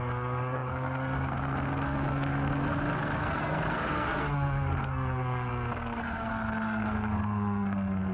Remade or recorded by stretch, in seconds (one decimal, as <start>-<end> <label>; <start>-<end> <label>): 0.0-8.1 remade